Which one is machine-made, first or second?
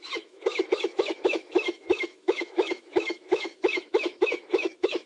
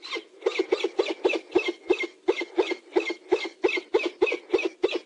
first